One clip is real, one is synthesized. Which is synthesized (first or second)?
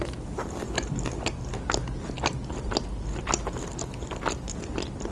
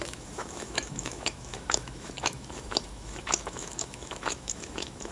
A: second